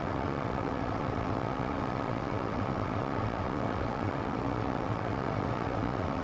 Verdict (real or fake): fake